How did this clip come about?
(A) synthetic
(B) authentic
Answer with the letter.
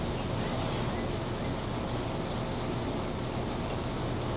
B